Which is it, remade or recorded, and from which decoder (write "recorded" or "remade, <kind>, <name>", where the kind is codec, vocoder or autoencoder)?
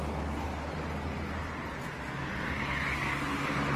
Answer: recorded